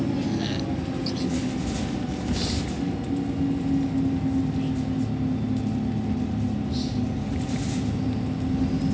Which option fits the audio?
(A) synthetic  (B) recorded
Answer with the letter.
B